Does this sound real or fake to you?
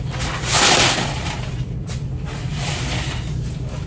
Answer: real